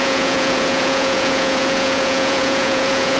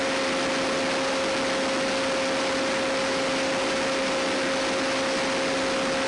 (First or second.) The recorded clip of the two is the second